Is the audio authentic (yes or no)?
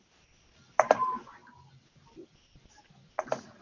yes